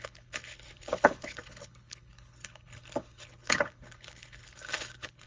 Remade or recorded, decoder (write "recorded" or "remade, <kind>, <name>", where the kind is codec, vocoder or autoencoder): remade, codec, HILCodec